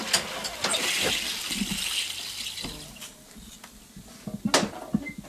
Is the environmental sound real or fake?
real